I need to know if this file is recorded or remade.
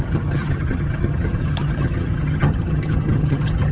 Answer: remade